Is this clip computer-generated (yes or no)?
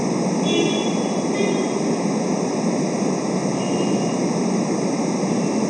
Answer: no